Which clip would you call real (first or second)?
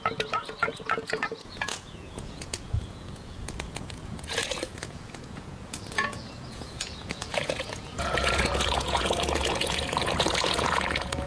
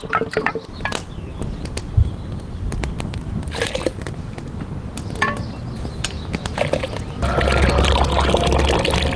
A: second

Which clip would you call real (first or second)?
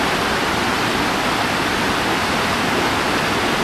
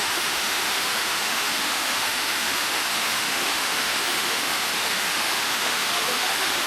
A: first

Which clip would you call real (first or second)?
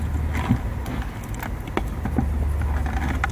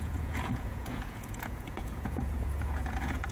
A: first